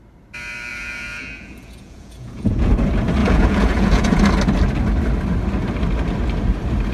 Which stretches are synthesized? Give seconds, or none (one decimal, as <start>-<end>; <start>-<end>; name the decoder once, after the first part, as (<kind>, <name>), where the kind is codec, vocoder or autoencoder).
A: 0.7-2.7 (vocoder, Vocos); 3.2-4.2